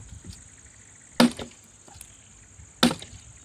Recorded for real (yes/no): yes